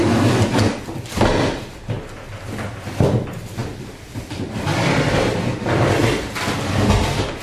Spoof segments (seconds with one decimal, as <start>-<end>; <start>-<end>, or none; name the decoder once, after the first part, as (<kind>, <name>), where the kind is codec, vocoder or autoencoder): none